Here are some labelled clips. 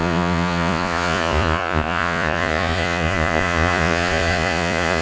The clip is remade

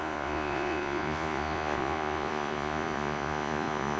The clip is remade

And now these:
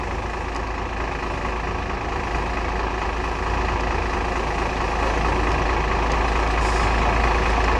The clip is recorded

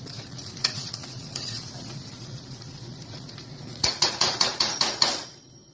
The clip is remade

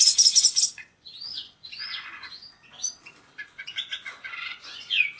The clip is remade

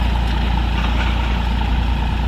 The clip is recorded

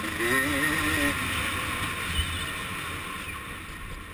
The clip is recorded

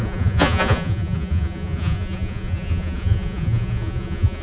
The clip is remade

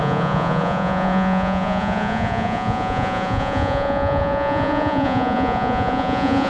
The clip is remade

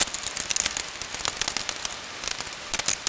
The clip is recorded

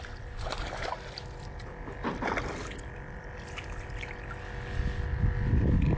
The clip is recorded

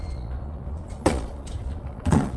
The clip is remade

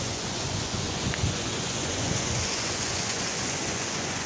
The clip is remade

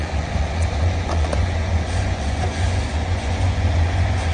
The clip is remade